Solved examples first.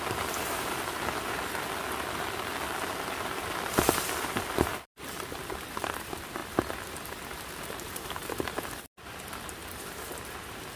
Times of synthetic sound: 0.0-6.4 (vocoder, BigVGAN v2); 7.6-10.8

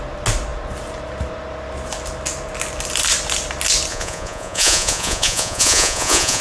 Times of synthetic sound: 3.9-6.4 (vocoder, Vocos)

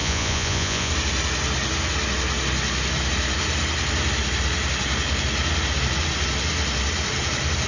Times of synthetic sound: 0.0-0.9 (vocoder, Vocos)

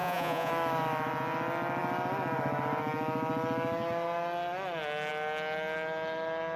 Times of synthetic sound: 0.0-0.5 (vocoder, Vocos)

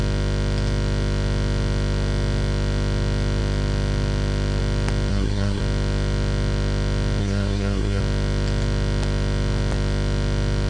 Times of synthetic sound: 5.1-5.6 (codec, SNAC); 7.2-8.0

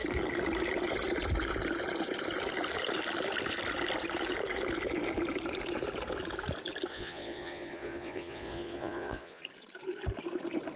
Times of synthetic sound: 6.9-9.4 (vocoder, Vocos)

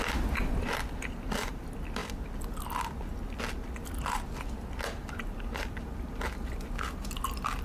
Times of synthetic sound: none